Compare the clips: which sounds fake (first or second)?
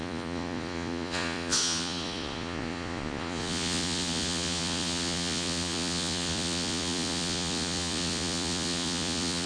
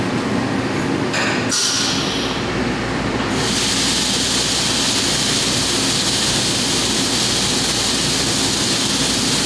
first